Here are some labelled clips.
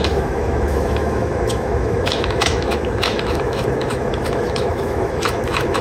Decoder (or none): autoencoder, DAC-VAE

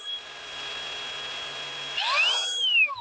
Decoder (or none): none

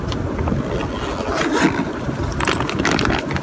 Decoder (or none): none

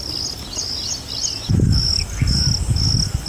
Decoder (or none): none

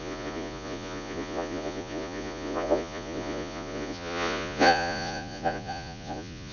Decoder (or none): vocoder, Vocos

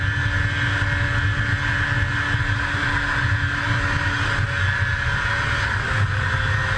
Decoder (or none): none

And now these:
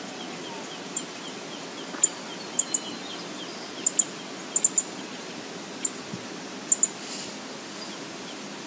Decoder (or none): none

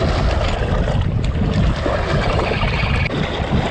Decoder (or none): none